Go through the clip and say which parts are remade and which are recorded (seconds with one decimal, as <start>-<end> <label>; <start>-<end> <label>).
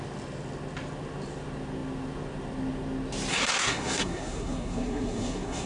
0.0-3.3 recorded; 3.3-5.7 remade